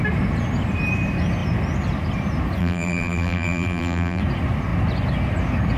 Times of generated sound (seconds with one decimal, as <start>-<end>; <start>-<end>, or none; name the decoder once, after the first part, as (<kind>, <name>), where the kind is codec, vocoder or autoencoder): 2.6-4.2 (vocoder, BigVGAN v2)